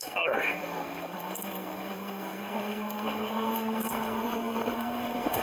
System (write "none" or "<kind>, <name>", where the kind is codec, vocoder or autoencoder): codec, SNAC